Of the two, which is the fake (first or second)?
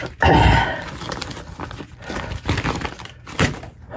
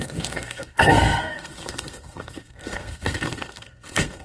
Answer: second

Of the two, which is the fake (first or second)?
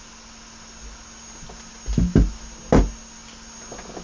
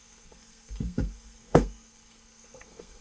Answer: second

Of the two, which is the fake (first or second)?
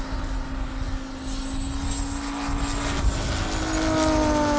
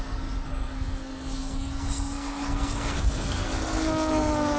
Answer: second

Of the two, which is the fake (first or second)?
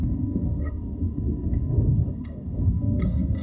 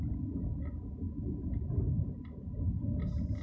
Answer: first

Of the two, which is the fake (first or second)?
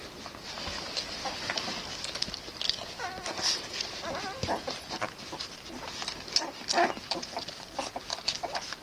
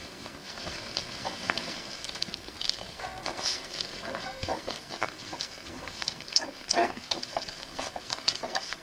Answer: second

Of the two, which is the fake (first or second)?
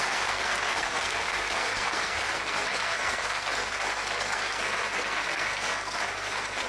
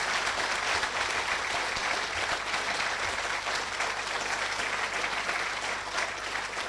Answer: first